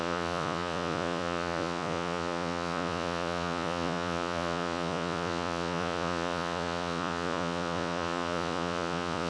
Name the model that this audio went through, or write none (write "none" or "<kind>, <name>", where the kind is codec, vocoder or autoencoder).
vocoder, Vocos